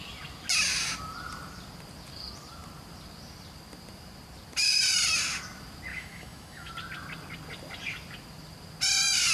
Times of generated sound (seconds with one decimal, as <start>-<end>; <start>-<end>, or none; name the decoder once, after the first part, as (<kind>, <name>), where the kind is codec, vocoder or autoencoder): 5.9-6.7 (autoencoder, DAC-VAE)